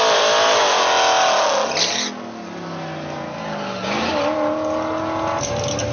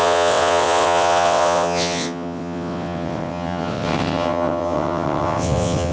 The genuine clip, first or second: first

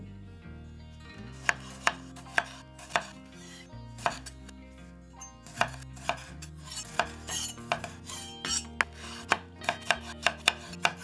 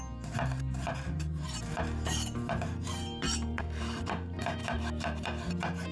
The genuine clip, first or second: first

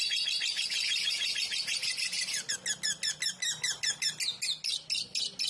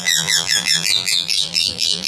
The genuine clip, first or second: first